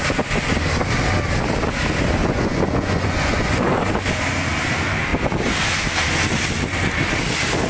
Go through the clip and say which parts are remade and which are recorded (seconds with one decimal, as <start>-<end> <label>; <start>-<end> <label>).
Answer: 0.0-2.2 recorded; 2.2-3.9 remade; 3.9-7.7 recorded